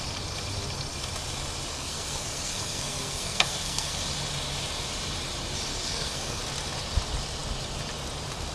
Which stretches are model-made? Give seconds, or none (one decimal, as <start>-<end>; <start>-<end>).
1.7-4.0; 5.7-6.4